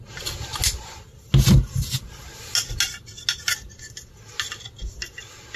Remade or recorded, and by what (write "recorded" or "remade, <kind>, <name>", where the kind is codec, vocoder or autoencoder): recorded